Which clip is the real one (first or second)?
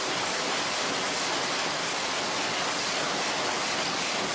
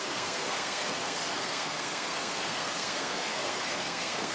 first